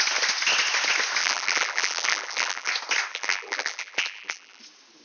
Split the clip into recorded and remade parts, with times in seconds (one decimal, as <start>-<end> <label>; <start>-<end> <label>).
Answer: 0.0-1.2 recorded; 1.2-2.7 remade; 2.7-3.1 recorded; 3.1-4.6 remade; 4.6-5.0 recorded